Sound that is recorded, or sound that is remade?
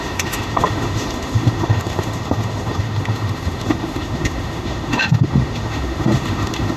remade